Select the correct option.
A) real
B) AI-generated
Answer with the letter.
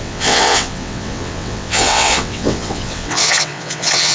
B